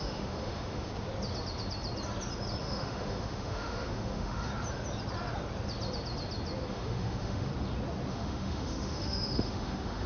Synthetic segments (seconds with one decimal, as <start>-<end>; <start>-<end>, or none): 0.0-0.9; 2.6-4.5; 6.7-7.5; 8.1-10.1